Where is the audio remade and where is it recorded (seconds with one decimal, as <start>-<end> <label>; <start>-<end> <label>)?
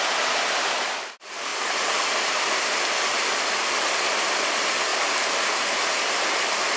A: 0.0-6.8 recorded